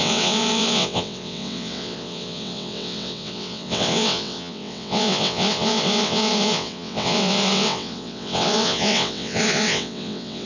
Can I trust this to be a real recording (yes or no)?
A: no